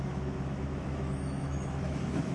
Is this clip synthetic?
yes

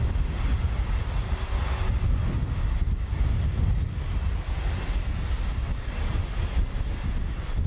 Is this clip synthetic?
no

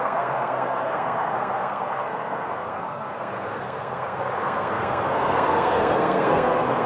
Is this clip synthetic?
yes